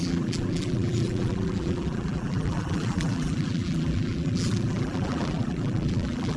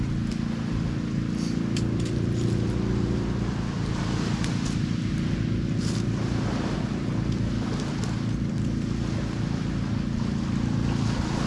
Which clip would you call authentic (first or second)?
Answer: second